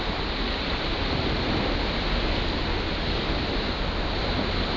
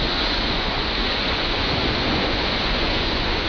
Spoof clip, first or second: second